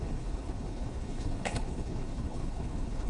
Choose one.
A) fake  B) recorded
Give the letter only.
A